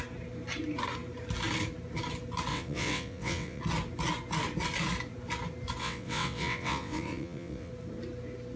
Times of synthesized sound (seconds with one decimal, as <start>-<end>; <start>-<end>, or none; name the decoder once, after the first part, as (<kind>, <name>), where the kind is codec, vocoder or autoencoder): 2.5-3.6 (vocoder, WaveNeXt); 5.8-7.7